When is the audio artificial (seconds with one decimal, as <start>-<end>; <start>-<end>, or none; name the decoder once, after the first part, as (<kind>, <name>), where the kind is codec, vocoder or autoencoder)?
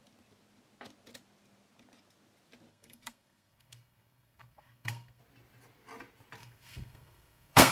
2.7-5.2 (codec, SNAC); 6.4-7.7